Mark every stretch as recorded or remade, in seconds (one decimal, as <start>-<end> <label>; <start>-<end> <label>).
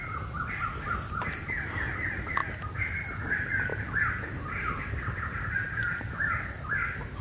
0.0-3.7 recorded; 3.7-5.2 remade; 5.2-7.2 recorded